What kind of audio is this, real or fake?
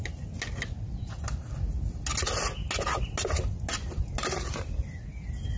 real